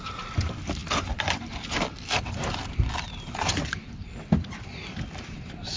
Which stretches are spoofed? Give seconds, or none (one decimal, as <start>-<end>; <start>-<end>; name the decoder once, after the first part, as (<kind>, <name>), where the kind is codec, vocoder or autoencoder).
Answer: none